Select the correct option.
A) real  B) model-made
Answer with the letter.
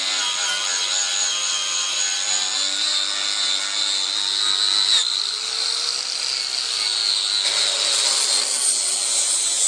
A